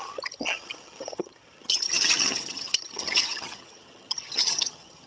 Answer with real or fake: fake